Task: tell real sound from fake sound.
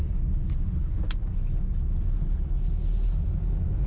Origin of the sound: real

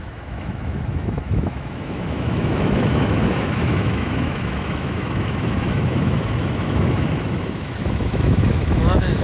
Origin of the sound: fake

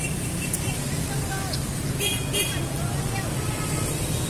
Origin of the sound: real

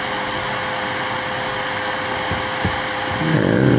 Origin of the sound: real